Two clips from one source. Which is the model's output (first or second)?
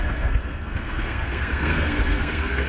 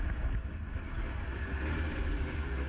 first